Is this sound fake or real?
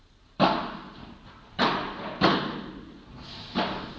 real